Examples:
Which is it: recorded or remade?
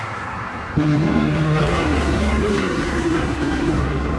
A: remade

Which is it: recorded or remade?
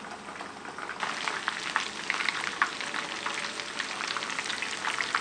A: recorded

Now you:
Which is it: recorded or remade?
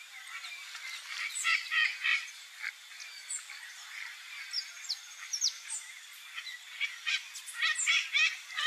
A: recorded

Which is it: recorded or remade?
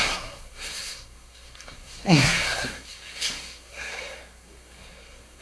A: remade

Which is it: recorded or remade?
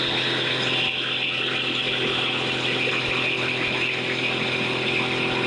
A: recorded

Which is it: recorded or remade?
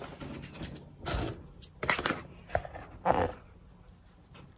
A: recorded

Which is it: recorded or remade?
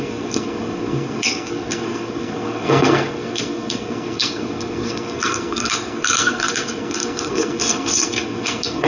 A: remade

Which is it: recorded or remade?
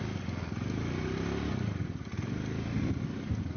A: recorded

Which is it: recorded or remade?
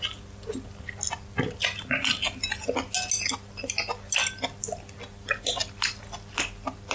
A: recorded